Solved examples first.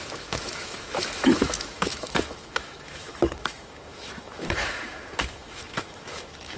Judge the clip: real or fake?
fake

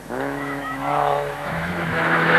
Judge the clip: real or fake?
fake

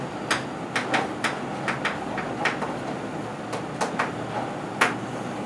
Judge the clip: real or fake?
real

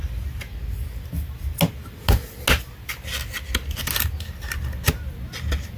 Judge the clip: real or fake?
real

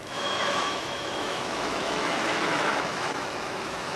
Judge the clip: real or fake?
fake